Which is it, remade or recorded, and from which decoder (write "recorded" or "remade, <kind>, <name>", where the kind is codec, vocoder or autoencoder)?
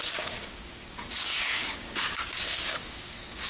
remade, codec, DAC